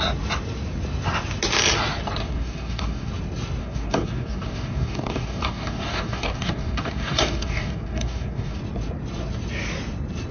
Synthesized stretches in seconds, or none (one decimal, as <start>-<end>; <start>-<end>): 2.2-3.1; 3.6-8.6